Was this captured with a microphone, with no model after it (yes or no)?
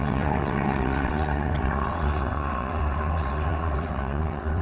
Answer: no